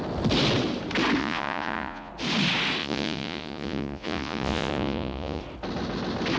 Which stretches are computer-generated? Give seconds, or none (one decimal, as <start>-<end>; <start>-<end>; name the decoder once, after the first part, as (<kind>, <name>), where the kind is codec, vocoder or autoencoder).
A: 1.2-2.1 (vocoder, Vocos); 2.8-5.4